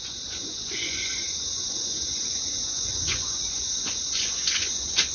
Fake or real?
fake